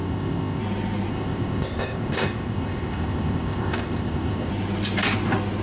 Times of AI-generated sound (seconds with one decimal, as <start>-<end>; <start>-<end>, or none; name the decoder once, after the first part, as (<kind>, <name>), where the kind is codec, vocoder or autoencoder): 0.0-0.6 (codec, ZipCodec); 1.1-4.5